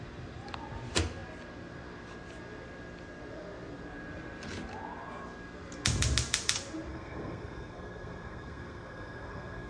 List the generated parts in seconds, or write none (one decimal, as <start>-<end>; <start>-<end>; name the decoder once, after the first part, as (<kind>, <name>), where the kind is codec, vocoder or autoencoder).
6.9-9.7 (codec, SNAC)